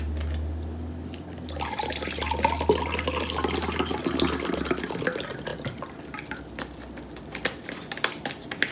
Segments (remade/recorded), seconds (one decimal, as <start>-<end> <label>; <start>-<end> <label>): 0.0-8.7 recorded